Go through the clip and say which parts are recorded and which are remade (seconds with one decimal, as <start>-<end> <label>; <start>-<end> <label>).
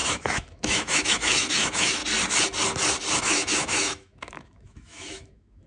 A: 0.0-2.0 remade; 2.0-3.2 recorded; 3.2-5.7 remade